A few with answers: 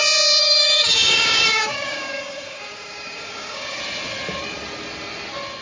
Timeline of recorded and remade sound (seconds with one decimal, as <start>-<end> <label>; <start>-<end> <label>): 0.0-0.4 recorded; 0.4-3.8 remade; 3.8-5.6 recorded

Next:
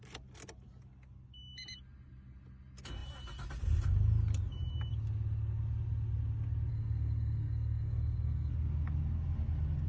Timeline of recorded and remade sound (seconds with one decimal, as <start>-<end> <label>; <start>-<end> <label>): 0.0-6.7 recorded; 6.7-8.5 remade; 8.5-9.9 recorded

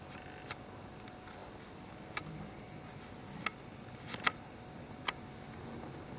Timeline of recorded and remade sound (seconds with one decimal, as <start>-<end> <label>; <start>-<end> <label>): 0.0-6.2 recorded

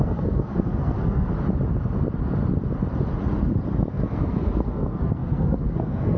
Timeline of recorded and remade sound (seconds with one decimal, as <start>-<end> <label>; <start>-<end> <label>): 0.0-1.3 remade; 1.3-3.9 recorded; 3.9-6.2 remade